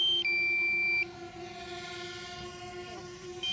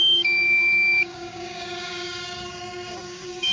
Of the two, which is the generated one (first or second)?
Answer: second